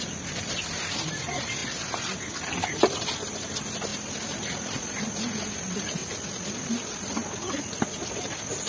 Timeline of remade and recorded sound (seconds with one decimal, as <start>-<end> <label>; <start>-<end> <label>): 0.0-8.7 recorded